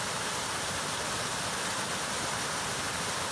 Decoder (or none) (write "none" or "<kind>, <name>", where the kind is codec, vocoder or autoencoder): none